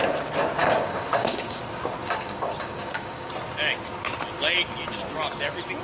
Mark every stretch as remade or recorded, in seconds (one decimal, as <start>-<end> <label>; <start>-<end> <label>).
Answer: 0.0-0.6 recorded; 0.6-1.6 remade; 1.6-2.0 recorded; 2.0-3.3 remade; 3.3-5.8 recorded